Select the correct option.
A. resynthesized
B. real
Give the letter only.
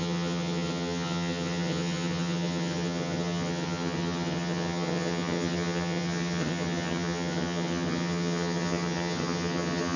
A